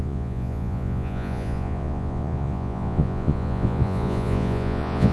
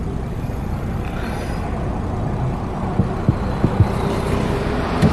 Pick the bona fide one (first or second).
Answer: second